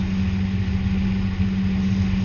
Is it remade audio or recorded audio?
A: recorded